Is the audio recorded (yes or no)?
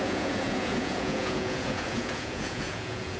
no